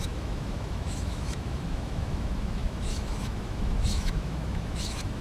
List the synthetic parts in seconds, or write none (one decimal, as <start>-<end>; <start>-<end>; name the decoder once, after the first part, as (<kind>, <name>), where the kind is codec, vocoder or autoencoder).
0.0-5.2 (autoencoder, DAC-VAE)